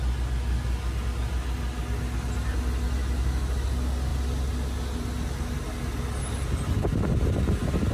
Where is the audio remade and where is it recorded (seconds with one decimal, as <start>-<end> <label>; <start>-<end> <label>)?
0.0-7.9 recorded